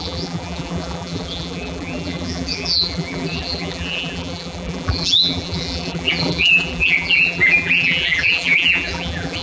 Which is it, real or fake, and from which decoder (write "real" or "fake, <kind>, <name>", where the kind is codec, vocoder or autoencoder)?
fake, vocoder, BigVGAN v2